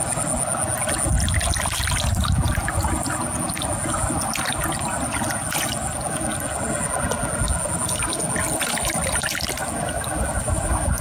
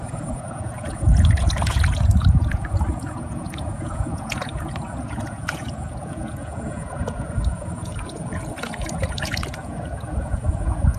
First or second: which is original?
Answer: first